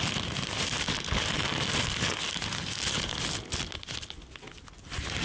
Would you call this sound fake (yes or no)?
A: no